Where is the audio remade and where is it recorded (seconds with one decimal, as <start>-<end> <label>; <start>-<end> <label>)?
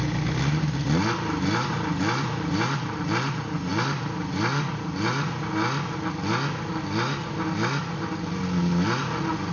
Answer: 0.0-9.5 recorded